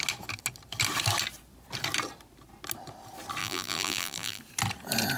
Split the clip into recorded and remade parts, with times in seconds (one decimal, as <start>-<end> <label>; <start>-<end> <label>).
0.0-3.4 recorded; 3.4-4.4 remade; 4.4-5.2 recorded